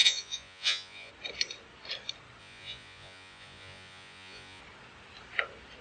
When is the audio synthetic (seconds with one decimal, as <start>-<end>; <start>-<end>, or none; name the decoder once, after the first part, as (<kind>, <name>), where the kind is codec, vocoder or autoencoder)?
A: 0.0-1.1 (vocoder, Vocos); 2.4-4.6